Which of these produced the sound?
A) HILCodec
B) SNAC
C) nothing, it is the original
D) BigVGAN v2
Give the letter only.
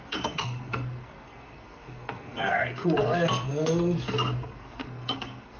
B